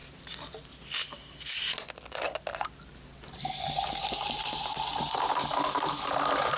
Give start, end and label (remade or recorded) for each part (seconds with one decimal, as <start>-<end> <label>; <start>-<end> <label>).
0.0-6.6 recorded